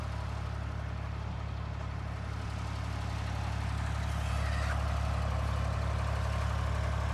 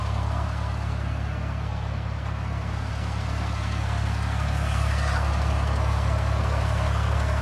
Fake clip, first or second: second